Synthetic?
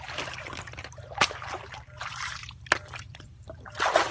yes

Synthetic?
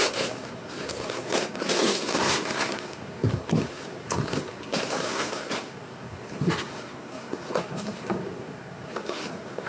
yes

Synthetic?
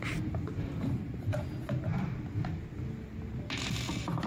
no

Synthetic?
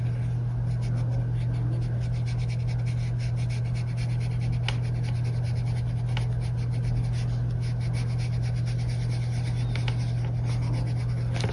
no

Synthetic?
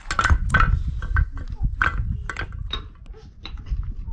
no